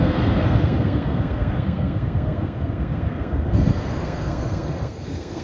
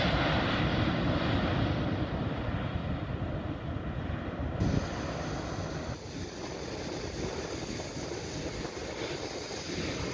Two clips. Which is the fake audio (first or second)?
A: first